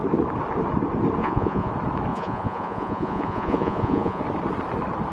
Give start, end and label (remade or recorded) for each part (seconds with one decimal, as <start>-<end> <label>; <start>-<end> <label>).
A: 0.0-1.2 recorded; 1.2-1.7 remade; 1.7-2.1 recorded; 2.1-4.2 remade; 4.2-5.1 recorded